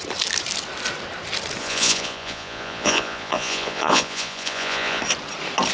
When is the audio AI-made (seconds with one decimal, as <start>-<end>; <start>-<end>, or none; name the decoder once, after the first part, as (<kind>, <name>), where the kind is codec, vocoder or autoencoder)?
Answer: 1.6-5.0 (vocoder, Vocos)